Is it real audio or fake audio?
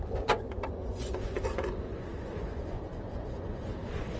fake